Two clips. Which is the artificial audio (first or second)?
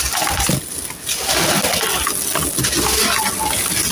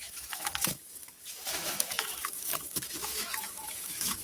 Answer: second